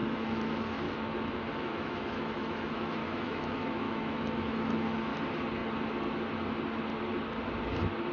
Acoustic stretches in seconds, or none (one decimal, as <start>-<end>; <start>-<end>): 5.1-8.1